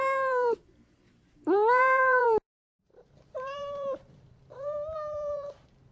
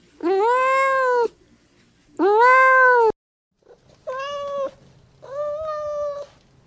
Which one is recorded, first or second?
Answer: second